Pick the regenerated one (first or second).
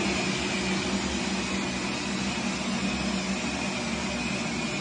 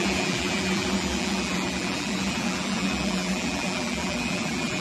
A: second